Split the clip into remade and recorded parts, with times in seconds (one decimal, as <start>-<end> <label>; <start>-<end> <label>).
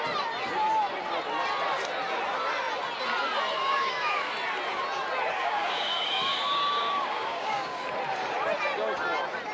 0.0-3.7 recorded; 3.7-4.3 remade; 4.3-5.4 recorded; 5.4-7.8 remade; 7.8-9.5 recorded